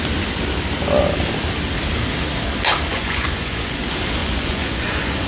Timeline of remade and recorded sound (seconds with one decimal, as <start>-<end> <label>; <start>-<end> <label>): 0.0-2.9 recorded; 2.9-3.8 remade; 3.8-4.2 recorded; 4.2-5.3 remade